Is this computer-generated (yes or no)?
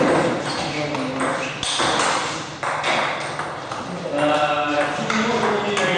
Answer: no